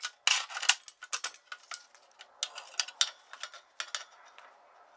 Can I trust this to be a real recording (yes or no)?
yes